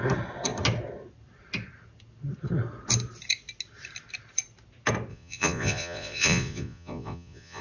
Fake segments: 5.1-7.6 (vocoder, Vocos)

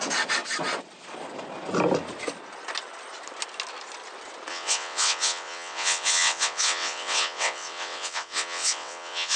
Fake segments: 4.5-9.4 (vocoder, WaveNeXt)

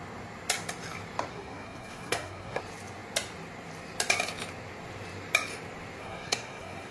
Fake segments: 1.3-2.6 (codec, SNAC); 6.0-6.9

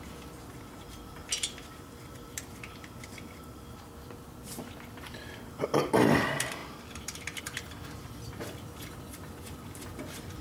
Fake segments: 0.0-1.2 (vocoder, BigVGAN v2); 2.0-10.4